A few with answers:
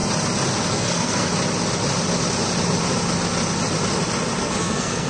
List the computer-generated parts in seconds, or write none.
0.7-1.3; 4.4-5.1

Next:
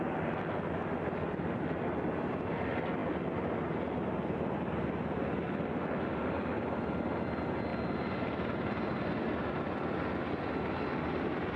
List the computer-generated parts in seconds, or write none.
none

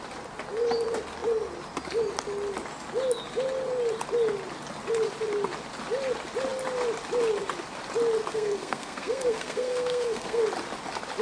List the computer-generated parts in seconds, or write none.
8.3-10.4